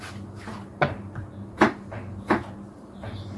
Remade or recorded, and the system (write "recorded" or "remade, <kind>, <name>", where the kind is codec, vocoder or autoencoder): remade, vocoder, BigVGAN v2